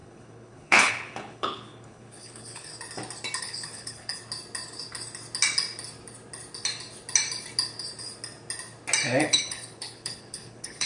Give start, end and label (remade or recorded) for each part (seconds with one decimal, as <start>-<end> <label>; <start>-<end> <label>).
0.0-2.7 remade; 2.7-3.4 recorded; 3.4-4.2 remade; 4.2-9.2 recorded; 9.2-10.9 remade